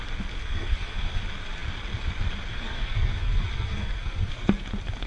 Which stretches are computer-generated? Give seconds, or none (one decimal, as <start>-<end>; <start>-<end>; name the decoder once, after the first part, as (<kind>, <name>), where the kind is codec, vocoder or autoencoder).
0.4-1.2 (codec, SNAC); 2.5-4.6

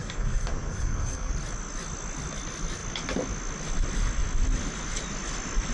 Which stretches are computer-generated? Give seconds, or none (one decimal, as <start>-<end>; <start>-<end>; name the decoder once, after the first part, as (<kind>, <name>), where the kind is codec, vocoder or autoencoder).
0.0-1.3 (codec, SNAC)

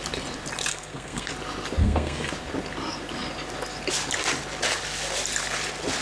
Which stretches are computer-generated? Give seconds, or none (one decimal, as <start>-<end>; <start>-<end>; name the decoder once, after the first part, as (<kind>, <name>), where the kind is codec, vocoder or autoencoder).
0.7-1.3 (codec, SNAC); 1.8-2.3

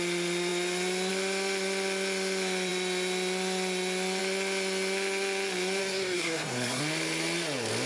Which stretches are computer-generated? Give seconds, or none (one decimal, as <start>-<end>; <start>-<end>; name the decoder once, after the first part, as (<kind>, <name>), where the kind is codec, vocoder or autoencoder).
5.8-6.8 (codec, SNAC)

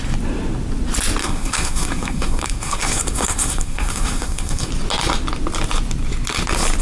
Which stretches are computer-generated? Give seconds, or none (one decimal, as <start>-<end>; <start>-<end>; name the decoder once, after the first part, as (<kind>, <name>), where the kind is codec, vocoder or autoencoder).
1.2-4.7 (codec, SNAC)

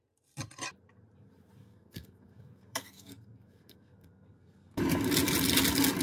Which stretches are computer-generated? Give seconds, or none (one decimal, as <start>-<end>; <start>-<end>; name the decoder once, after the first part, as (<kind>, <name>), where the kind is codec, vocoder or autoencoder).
1.6-4.8 (codec, SNAC)

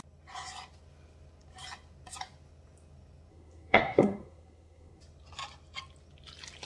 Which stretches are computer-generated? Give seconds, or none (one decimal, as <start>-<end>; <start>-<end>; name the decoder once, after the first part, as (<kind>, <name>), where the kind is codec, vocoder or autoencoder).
3.3-5.0 (codec, SNAC)